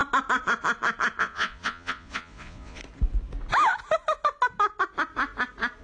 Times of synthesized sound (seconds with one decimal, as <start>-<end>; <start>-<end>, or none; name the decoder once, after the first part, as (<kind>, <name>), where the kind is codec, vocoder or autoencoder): 1.2-2.8 (vocoder, Vocos)